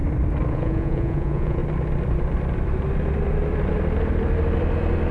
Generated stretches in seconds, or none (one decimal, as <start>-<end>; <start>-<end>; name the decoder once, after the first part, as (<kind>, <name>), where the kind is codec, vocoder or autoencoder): 0.5-1.6 (vocoder, Vocos)